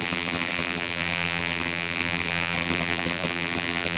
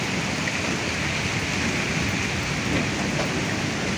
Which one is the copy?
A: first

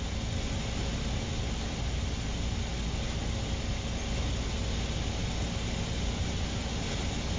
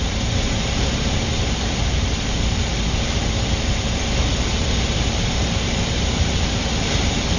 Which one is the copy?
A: second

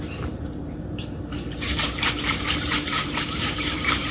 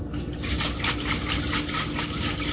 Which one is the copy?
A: first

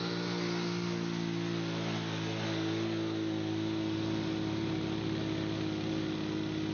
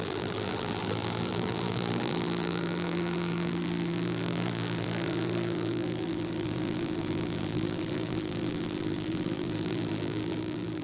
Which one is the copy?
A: second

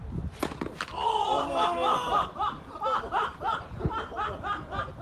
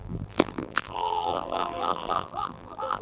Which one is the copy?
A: second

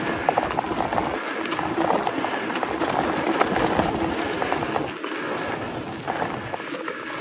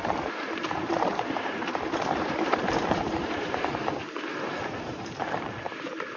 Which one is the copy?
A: second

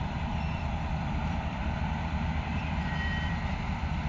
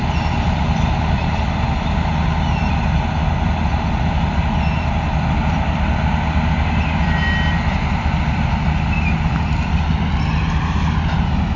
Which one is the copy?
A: first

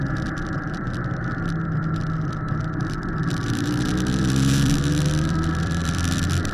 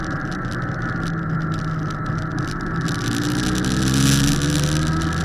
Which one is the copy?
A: first